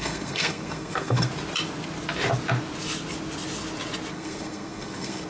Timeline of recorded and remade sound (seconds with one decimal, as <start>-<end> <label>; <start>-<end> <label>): 0.0-1.3 remade; 1.3-4.1 recorded; 4.1-5.3 remade